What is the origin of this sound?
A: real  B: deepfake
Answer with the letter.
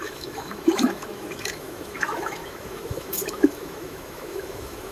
B